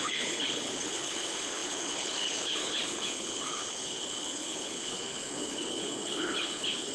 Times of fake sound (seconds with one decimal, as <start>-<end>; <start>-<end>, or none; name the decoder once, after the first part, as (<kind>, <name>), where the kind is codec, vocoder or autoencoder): 0.0-6.9 (codec, HILCodec)